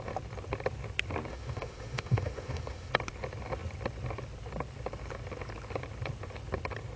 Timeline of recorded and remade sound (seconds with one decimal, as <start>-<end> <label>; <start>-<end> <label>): 0.0-1.3 recorded; 1.3-2.9 remade; 2.9-7.0 recorded